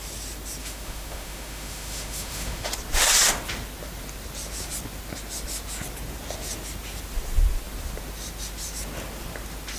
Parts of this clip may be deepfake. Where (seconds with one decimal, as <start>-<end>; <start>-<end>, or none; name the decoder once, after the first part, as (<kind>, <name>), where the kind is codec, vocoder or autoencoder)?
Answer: 0.6-2.7 (autoencoder, DAC-VAE)